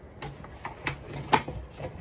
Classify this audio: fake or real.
real